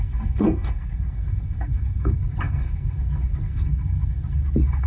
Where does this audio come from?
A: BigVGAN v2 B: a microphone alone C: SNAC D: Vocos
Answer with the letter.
C